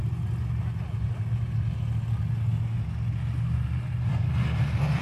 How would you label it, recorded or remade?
recorded